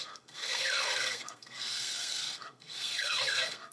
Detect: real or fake fake